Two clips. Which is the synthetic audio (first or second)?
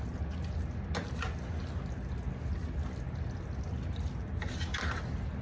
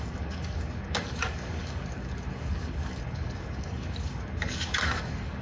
second